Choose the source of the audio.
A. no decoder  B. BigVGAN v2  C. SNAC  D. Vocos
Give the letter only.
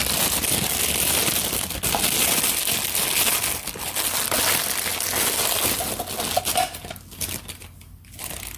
A